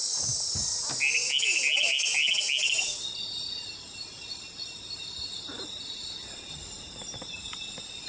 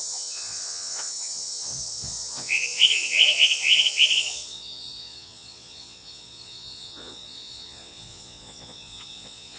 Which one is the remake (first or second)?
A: second